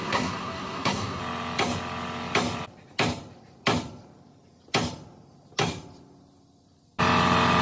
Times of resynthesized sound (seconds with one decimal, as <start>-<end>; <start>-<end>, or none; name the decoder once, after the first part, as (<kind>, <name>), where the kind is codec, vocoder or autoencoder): 0.0-1.2 (codec, SNAC)